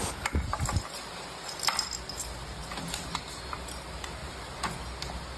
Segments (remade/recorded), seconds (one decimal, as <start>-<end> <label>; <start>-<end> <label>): 0.0-4.2 recorded; 4.2-4.7 remade; 4.7-5.4 recorded